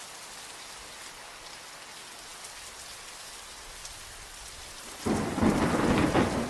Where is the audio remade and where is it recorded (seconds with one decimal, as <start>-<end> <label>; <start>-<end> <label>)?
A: 0.0-6.5 recorded